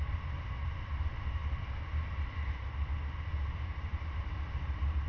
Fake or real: real